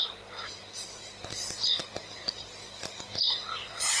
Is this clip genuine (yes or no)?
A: no